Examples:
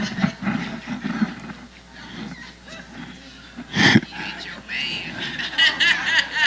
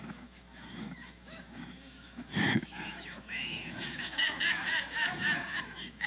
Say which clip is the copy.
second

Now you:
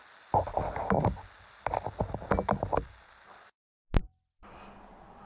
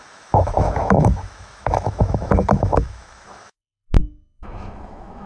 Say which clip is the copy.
second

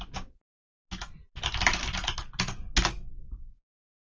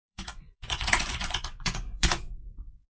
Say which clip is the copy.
second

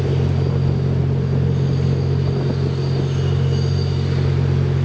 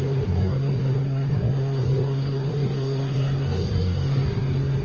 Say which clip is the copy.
second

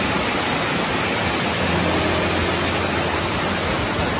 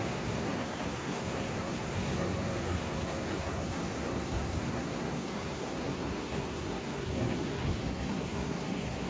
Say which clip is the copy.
second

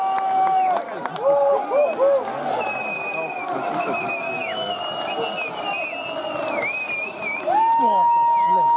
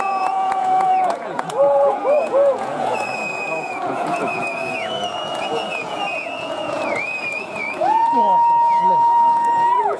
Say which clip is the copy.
second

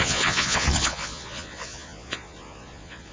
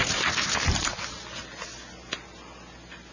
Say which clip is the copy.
first